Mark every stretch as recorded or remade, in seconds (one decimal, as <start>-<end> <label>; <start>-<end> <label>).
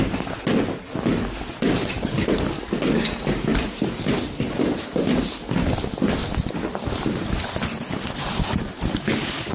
0.0-3.5 recorded; 3.5-4.8 remade; 4.8-9.5 recorded